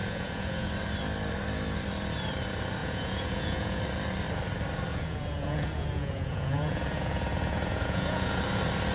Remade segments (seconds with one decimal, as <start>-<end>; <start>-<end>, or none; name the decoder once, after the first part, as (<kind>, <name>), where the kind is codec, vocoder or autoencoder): 0.0-0.7 (vocoder, Vocos); 2.8-3.8; 4.9-8.4